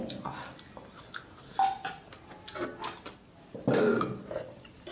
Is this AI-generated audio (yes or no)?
no